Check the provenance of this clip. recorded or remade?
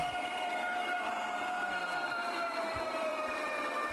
remade